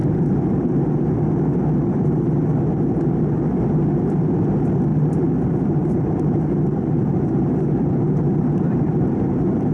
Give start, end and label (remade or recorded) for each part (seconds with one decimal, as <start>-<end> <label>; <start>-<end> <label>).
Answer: 0.0-0.5 remade; 0.5-4.9 recorded; 4.9-9.7 remade

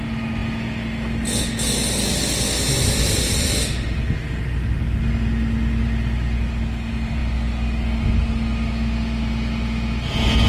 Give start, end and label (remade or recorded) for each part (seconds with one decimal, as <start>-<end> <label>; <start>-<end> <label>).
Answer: 0.0-10.5 recorded

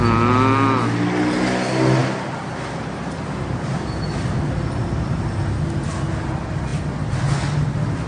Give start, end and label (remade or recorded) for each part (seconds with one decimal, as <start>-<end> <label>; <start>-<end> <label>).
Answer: 0.0-6.7 recorded; 6.7-8.1 remade

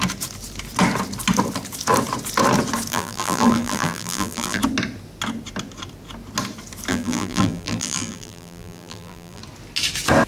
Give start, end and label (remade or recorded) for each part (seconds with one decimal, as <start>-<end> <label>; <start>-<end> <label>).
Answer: 0.0-2.9 recorded; 2.9-4.6 remade; 4.6-6.9 recorded; 6.9-9.4 remade; 9.4-10.3 recorded